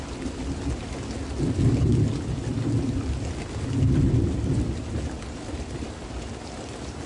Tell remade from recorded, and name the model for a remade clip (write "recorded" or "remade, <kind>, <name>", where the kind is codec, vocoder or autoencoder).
recorded